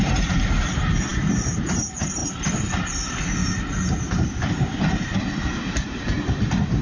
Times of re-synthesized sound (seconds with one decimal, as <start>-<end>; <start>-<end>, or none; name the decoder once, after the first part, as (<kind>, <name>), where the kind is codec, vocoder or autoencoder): 0.0-2.2 (vocoder, BigVGAN v2); 2.7-3.4; 4.1-6.8